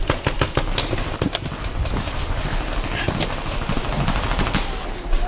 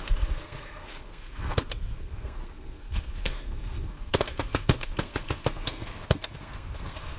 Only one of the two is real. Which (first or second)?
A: first